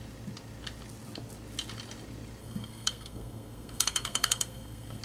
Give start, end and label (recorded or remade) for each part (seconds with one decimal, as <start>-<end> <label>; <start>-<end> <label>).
0.0-2.4 recorded; 2.4-5.0 remade